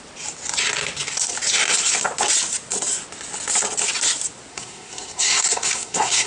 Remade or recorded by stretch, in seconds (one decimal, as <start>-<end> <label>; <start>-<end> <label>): 0.0-4.5 recorded; 4.5-6.3 remade